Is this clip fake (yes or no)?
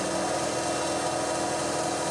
no